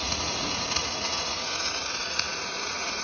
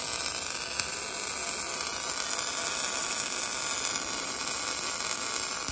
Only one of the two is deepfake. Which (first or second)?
first